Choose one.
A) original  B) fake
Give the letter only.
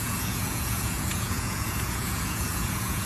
B